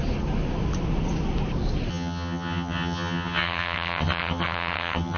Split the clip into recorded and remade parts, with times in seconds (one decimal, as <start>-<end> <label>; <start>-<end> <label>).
0.0-1.9 recorded; 1.9-5.2 remade